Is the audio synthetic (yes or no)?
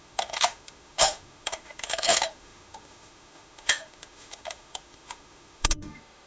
yes